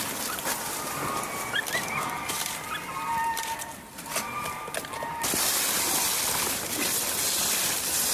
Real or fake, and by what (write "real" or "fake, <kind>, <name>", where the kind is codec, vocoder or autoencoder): fake, vocoder, BigVGAN v2